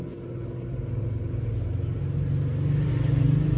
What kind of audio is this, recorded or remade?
recorded